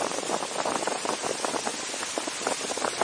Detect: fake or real real